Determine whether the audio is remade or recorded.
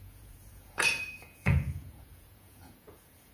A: remade